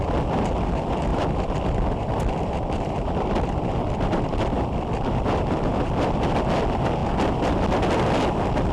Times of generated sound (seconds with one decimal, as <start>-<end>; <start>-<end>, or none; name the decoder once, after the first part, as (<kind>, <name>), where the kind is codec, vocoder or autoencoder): 1.1-6.3 (vocoder, BigVGAN v2); 7.0-7.9